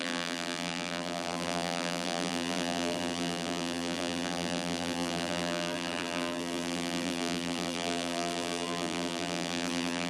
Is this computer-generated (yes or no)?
yes